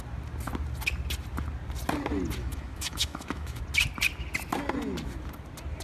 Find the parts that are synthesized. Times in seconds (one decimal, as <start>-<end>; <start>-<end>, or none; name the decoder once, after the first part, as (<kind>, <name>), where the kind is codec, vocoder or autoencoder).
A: 2.4-3.6 (autoencoder, DAC-VAE)